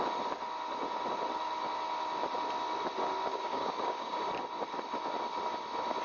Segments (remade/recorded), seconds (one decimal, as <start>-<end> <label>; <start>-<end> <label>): 0.0-3.3 recorded; 3.3-4.2 remade; 4.2-6.0 recorded